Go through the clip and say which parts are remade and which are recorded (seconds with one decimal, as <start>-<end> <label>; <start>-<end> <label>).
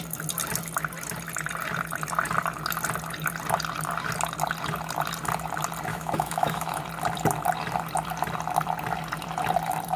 0.0-5.9 recorded; 5.9-6.8 remade; 6.8-10.0 recorded